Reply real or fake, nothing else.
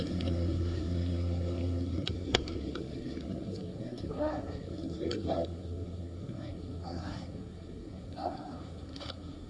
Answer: fake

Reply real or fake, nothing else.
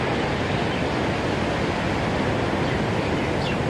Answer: real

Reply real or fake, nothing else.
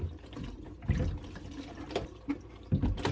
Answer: real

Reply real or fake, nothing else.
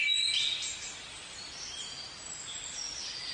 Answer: real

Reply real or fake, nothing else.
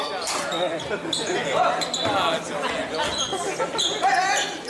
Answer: real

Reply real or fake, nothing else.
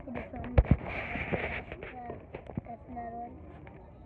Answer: real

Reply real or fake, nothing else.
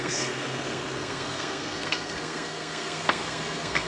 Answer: fake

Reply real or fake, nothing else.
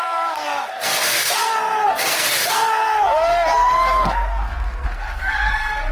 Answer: fake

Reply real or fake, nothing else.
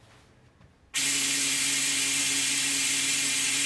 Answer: real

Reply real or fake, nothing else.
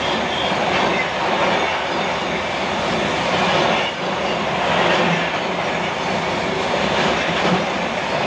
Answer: real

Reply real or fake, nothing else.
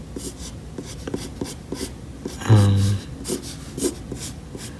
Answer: real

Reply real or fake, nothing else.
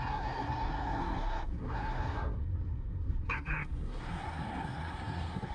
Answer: fake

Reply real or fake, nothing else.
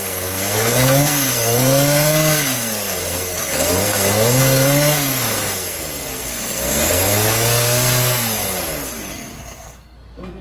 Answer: fake